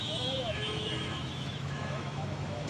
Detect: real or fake fake